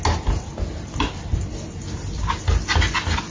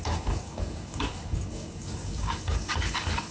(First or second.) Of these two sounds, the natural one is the first